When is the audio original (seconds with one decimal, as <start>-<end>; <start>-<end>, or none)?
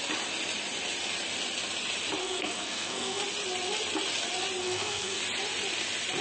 0.0-2.2; 3.2-4.6; 5.2-6.2